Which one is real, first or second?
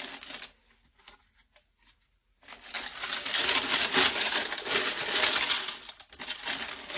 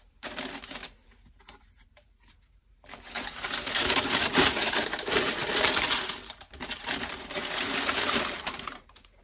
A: first